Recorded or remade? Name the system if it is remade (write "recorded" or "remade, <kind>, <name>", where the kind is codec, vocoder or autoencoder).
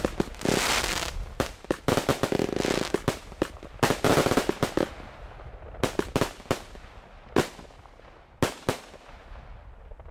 recorded